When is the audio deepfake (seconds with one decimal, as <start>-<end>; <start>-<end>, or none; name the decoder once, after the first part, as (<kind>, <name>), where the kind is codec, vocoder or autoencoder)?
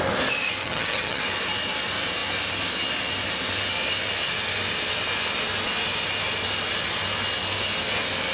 0.6-1.2 (vocoder, HiFi-GAN)